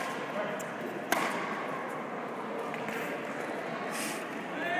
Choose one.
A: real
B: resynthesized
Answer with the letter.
A